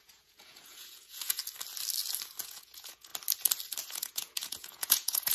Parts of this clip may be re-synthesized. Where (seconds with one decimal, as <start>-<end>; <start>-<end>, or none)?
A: 0.0-1.4; 2.4-3.1; 3.8-5.3